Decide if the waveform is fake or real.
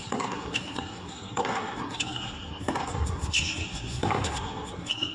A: fake